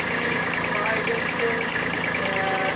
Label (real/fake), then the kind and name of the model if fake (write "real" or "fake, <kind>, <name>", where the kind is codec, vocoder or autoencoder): fake, codec, DAC